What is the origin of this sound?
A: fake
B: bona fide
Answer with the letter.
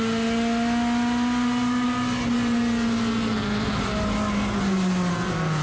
B